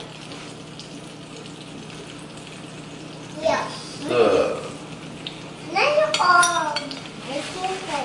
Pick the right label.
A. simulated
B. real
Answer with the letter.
B